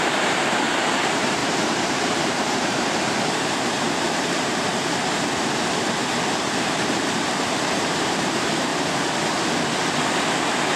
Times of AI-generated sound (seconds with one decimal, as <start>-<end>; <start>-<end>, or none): 0.0-4.7; 6.4-8.7